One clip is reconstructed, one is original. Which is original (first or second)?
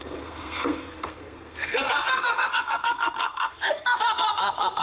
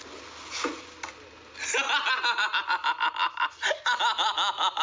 second